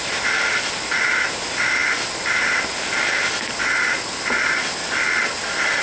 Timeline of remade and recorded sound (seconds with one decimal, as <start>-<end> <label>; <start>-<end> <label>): 0.0-5.8 recorded